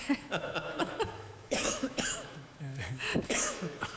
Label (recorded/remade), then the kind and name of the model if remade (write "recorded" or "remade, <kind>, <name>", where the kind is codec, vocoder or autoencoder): remade, autoencoder, DAC-VAE